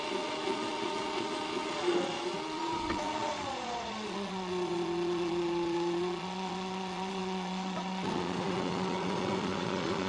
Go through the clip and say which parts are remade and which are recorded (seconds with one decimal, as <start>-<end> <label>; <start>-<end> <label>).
0.0-10.1 remade